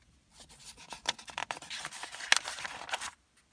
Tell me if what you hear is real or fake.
real